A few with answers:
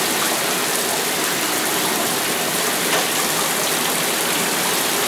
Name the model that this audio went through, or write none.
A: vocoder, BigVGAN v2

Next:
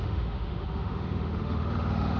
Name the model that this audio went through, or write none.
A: autoencoder, DAC-VAE